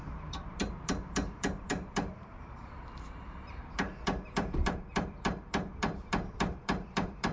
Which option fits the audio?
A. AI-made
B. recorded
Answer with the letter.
A